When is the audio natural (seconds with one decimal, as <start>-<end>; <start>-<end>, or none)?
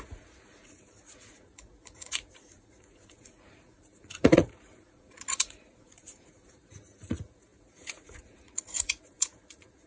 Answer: none